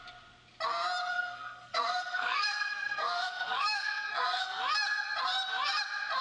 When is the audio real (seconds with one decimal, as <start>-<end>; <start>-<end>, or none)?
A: 0.0-1.1; 4.6-6.2